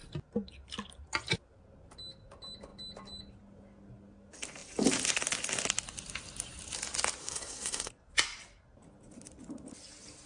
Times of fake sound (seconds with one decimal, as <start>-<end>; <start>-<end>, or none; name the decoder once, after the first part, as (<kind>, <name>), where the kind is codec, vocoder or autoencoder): 7.2-7.9 (codec, SNAC)